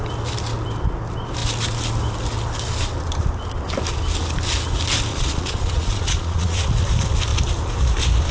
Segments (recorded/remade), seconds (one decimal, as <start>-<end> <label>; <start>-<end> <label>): 0.0-5.1 recorded; 5.1-6.7 remade; 6.7-8.3 recorded